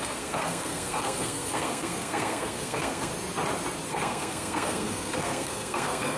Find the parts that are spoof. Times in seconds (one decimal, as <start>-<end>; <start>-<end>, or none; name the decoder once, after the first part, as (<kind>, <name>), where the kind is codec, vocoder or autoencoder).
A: 0.0-3.1 (codec, SNAC); 3.9-6.2